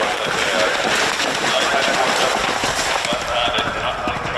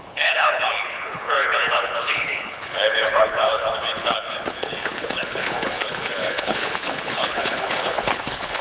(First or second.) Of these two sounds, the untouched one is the first